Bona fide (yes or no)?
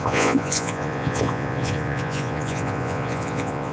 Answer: no